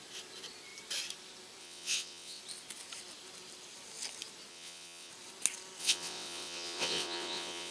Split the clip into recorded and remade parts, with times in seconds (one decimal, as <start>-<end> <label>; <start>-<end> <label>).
0.0-1.6 recorded; 1.6-2.4 remade; 2.4-4.5 recorded; 4.5-5.1 remade; 5.1-5.8 recorded; 5.8-7.7 remade